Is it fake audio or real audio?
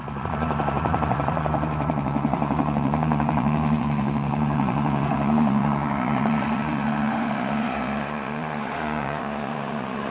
fake